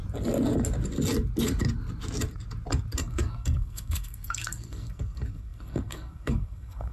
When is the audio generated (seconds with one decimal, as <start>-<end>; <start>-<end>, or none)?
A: 3.0-6.9